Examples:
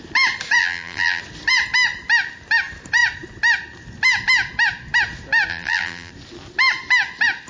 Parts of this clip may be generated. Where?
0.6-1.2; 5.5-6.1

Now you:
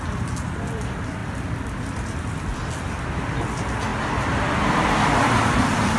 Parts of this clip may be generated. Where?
1.2-2.4

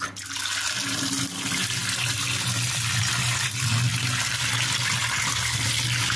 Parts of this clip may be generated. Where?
1.8-3.5